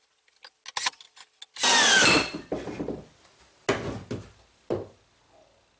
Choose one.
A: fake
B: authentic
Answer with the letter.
B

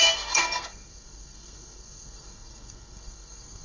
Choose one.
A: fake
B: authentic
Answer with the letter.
A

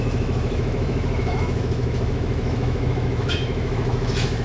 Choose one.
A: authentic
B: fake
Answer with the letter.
B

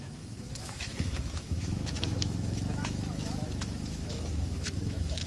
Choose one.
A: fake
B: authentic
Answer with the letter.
A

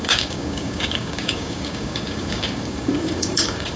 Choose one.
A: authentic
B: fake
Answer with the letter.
B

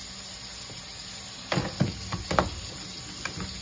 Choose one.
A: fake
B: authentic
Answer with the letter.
B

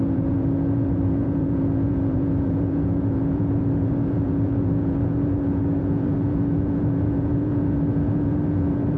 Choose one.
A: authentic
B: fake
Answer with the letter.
B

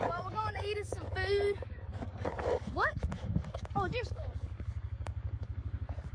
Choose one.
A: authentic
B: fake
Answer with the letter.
B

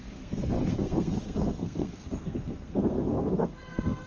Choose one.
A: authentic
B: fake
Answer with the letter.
B